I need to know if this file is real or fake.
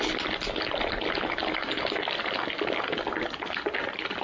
real